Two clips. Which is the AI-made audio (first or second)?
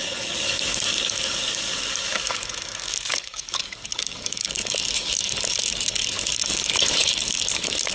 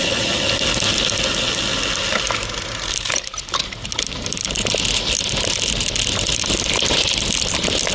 first